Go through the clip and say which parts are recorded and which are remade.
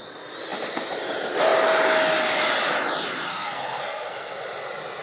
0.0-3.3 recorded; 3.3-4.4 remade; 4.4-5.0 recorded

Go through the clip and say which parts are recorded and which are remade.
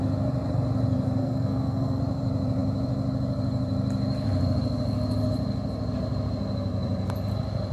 0.0-1.2 recorded; 1.2-2.0 remade; 2.0-7.7 recorded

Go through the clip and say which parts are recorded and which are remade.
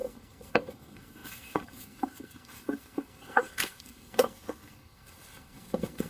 0.0-6.1 remade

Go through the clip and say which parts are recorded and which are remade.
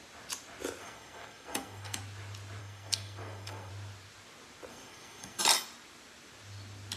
0.0-0.8 recorded; 0.8-2.0 remade; 2.0-2.6 recorded; 2.6-3.7 remade; 3.7-4.7 recorded; 4.7-5.4 remade; 5.4-7.0 recorded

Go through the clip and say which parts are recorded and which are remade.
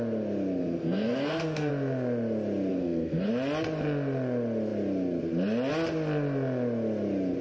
0.0-0.6 recorded; 0.6-1.7 remade; 1.7-2.7 recorded; 2.7-3.3 remade; 3.3-7.4 recorded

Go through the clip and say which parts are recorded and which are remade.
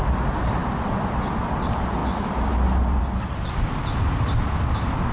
0.0-5.1 recorded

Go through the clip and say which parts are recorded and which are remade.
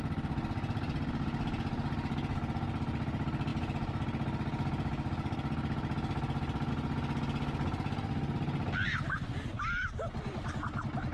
0.0-11.1 recorded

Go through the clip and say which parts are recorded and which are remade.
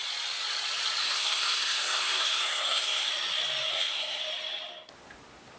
0.0-1.0 recorded; 1.0-3.1 remade; 3.1-3.7 recorded; 3.7-4.2 remade; 4.2-5.6 recorded